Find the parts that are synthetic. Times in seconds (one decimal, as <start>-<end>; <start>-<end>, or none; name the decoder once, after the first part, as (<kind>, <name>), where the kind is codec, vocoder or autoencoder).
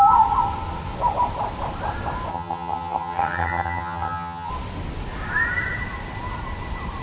2.3-4.5 (vocoder, HiFi-GAN)